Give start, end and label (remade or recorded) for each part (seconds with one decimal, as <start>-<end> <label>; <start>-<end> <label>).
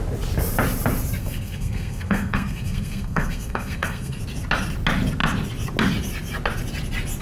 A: 0.0-1.2 recorded; 1.2-4.2 remade; 4.2-7.2 recorded